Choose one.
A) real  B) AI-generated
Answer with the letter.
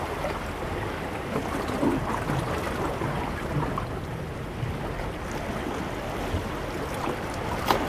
A